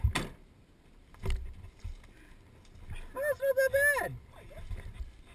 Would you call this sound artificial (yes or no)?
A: no